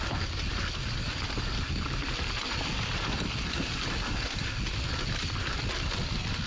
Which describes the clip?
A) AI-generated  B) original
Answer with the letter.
B